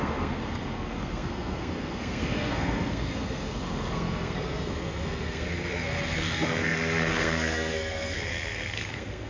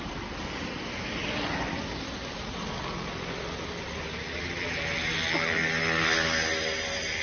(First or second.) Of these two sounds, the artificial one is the first